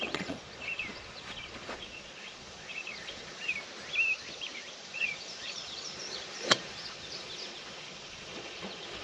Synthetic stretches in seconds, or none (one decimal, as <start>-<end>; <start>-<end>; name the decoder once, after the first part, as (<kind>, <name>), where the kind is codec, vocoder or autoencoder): 0.0-3.5 (vocoder, Vocos); 4.8-9.0